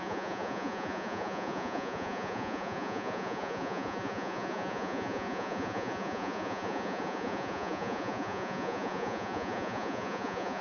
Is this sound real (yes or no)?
no